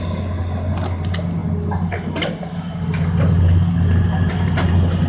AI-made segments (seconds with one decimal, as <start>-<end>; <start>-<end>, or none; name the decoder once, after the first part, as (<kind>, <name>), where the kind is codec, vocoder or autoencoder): none